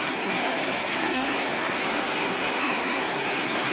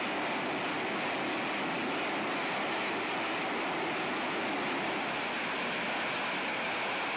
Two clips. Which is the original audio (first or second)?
second